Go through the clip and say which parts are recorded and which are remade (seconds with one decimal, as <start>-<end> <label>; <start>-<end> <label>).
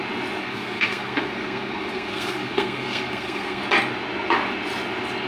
0.0-0.4 recorded; 0.4-3.6 remade; 3.6-5.3 recorded